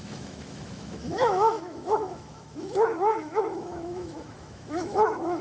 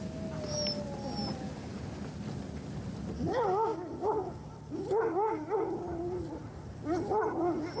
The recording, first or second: second